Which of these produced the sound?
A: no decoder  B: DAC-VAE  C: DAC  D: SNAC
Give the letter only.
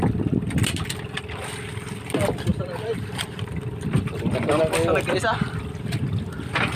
A